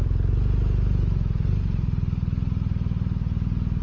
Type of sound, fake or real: real